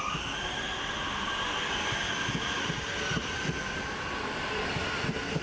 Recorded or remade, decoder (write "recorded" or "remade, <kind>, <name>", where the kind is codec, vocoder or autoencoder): recorded